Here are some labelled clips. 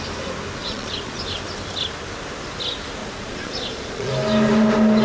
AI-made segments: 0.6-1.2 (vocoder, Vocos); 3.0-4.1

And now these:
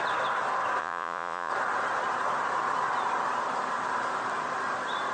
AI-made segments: 0.8-1.5 (vocoder, Vocos)